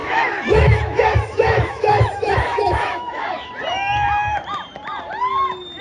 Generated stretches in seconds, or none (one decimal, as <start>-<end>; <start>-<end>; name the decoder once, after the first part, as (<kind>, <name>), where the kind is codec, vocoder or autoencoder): 0.0-3.5 (autoencoder, DAC-VAE)